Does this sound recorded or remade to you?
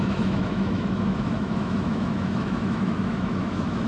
remade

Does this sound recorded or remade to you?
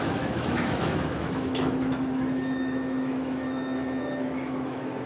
remade